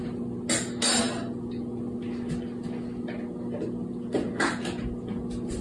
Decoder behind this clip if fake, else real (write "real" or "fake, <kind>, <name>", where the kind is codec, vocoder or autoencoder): real